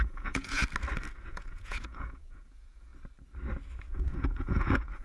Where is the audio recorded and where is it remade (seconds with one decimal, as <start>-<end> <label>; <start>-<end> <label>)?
0.0-0.6 remade; 0.6-1.2 recorded; 1.2-2.9 remade; 2.9-3.9 recorded; 3.9-5.0 remade